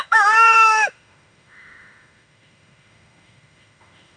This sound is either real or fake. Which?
fake